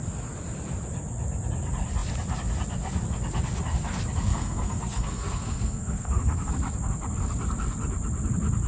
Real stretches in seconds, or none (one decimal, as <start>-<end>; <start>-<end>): 0.0-4.3; 6.5-8.7